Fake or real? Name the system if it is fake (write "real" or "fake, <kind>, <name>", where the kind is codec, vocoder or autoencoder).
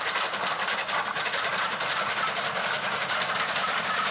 real